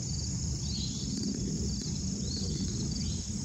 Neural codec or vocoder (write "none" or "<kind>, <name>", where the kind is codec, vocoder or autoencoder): none